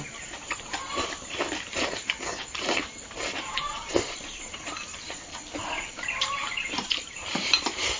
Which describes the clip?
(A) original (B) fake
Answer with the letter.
B